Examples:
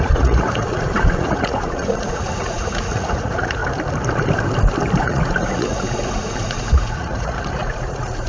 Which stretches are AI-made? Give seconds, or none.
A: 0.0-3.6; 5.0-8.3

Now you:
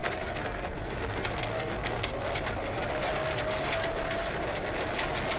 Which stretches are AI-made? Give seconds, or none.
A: 0.0-2.1

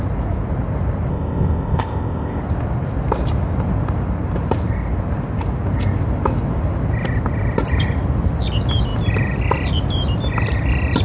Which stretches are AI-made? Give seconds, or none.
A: 1.1-2.4

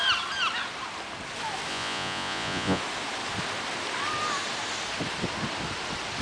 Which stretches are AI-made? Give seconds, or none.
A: 1.7-2.8